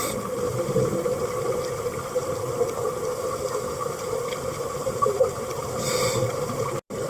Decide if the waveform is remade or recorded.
remade